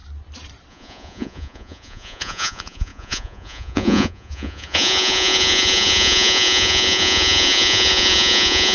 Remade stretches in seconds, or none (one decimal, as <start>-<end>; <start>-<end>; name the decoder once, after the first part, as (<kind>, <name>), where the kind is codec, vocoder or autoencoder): 0.7-8.7 (vocoder, Vocos)